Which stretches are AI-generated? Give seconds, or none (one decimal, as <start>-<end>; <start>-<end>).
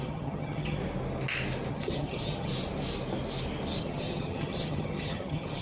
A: 0.0-0.8; 1.7-2.5; 3.8-5.6